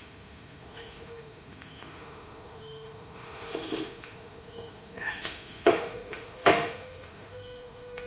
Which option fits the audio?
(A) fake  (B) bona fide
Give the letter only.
A